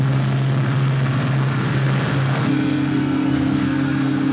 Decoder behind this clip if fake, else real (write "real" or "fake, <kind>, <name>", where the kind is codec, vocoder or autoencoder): fake, codec, SNAC